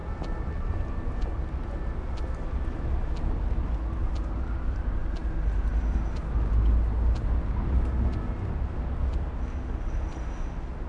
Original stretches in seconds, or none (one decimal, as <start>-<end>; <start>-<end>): 0.0-10.9